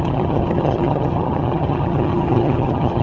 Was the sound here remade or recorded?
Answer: remade